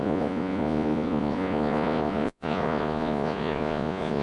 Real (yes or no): no